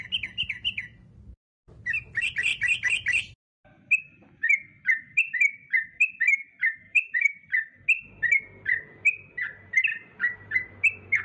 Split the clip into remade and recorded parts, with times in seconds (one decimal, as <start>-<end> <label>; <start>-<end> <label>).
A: 0.0-6.3 recorded; 6.3-7.4 remade; 7.4-9.9 recorded; 9.9-10.7 remade; 10.7-11.2 recorded